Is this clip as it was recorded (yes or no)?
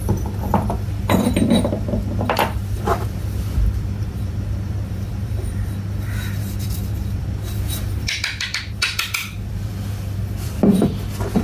no